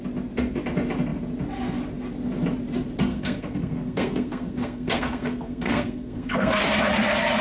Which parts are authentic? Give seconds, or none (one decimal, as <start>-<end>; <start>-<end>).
0.0-3.1; 6.6-7.4